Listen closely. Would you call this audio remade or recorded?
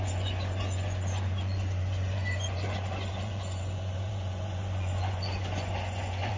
remade